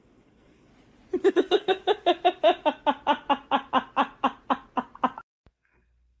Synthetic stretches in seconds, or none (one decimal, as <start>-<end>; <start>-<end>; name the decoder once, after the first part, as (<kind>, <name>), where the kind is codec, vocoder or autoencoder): 0.0-0.7 (codec, SNAC); 1.3-1.8; 5.5-6.2